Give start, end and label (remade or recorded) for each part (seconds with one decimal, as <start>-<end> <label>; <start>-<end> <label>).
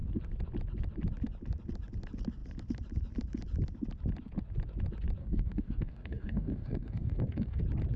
0.0-5.2 recorded; 5.2-7.6 remade; 7.6-8.0 recorded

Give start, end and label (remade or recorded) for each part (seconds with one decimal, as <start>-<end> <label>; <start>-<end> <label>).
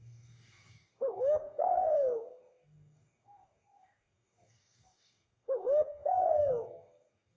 0.0-7.4 remade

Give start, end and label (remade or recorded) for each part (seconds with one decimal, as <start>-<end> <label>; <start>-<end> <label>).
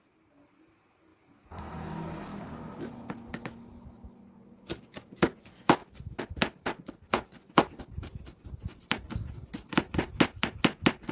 0.0-2.3 recorded; 2.3-2.8 remade; 2.8-11.1 recorded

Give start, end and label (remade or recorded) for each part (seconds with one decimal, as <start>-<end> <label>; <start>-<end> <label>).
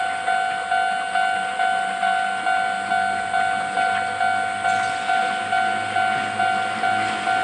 0.0-7.4 recorded